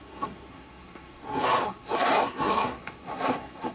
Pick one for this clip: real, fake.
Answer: fake